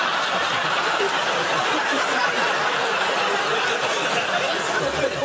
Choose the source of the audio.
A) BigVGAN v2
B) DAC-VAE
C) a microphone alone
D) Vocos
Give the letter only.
C